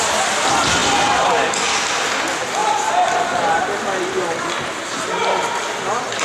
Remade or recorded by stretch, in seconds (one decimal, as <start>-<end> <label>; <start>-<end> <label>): 0.0-6.2 recorded